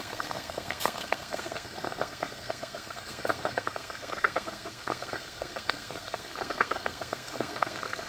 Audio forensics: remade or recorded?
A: remade